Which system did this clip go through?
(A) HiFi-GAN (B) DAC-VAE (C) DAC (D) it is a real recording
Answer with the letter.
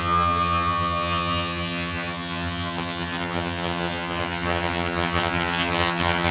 A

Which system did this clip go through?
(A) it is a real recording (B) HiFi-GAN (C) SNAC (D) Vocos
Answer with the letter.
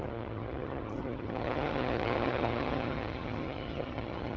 B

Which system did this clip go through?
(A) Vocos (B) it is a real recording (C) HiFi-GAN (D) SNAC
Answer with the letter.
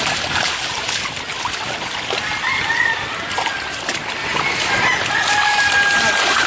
B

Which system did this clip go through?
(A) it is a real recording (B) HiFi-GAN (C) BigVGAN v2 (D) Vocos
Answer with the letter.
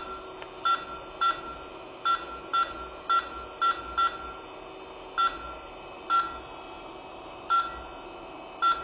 A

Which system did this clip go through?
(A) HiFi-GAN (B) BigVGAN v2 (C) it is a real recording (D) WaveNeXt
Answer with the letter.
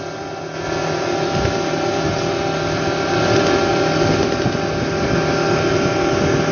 C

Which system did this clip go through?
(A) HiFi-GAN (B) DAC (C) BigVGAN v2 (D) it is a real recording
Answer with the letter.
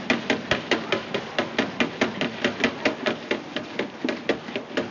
D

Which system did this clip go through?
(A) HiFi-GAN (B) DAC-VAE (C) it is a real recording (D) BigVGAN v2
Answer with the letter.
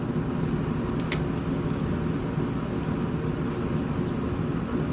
C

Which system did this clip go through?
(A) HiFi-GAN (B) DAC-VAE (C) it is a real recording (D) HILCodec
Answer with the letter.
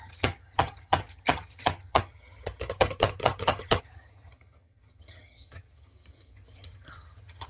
A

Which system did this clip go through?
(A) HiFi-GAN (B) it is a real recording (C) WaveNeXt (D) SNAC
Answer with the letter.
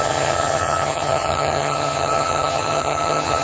A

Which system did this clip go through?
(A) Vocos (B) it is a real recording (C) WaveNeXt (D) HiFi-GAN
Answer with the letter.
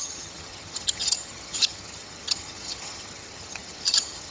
D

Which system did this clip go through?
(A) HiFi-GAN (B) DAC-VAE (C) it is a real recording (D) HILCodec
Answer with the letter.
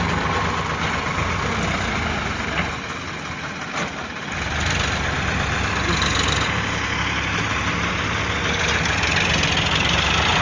C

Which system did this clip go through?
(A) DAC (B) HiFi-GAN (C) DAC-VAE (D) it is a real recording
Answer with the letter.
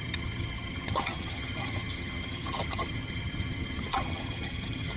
B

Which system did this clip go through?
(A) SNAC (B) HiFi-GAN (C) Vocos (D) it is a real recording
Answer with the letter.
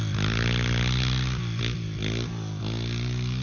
D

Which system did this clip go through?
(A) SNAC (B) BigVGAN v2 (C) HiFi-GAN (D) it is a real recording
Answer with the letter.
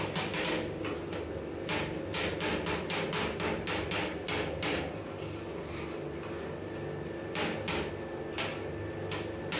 D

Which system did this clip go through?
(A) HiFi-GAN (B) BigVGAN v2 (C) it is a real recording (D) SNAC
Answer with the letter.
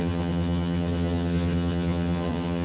A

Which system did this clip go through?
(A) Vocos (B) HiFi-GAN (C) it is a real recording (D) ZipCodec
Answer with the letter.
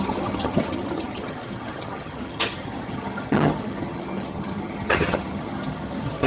B